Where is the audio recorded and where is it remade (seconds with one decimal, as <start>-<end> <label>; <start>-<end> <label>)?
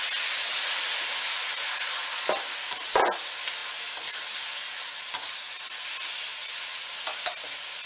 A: 0.0-0.5 recorded; 0.5-2.2 remade; 2.2-6.3 recorded; 6.3-7.0 remade; 7.0-7.9 recorded